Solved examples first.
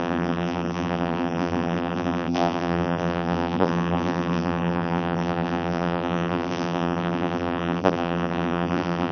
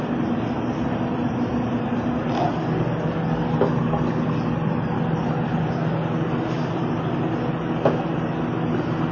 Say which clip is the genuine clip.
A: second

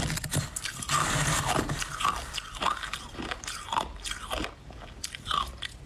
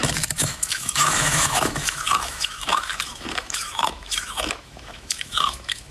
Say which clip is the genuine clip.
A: first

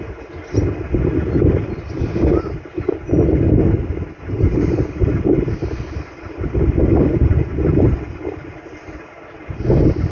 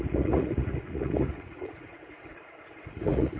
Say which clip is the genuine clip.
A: first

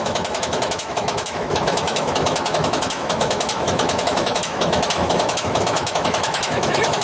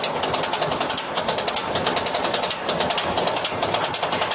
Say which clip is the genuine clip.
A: second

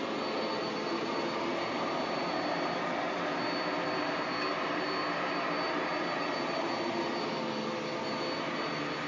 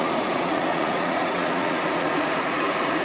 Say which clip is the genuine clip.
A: first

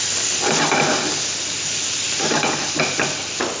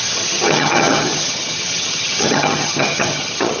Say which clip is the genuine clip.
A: first